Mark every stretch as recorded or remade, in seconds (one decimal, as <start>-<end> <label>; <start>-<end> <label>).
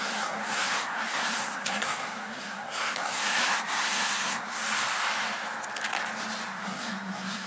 0.0-4.6 remade; 4.6-6.5 recorded; 6.5-7.5 remade